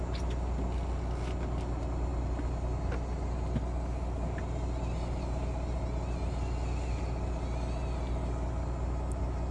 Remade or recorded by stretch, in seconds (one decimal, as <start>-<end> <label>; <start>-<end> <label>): 0.0-9.5 recorded